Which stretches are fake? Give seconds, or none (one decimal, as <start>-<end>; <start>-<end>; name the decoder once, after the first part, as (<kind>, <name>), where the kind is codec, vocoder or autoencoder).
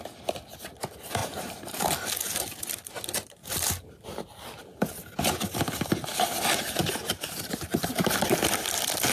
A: 1.2-1.8 (vocoder, BigVGAN v2); 3.4-5.2; 6.8-8.4